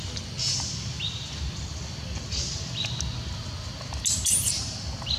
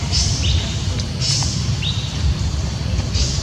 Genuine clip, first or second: first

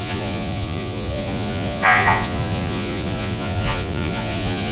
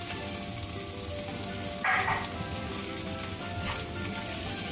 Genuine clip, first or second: second